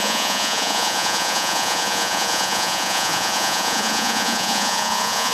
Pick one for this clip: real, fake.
fake